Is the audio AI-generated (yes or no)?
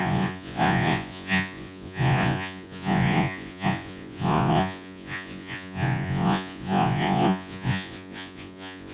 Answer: yes